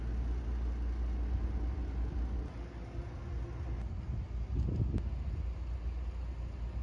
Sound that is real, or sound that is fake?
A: real